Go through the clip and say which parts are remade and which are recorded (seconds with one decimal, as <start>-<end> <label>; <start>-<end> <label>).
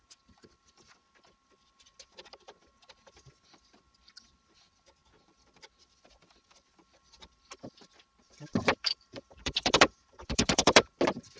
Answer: 0.0-8.2 recorded; 8.2-10.9 remade; 10.9-11.4 recorded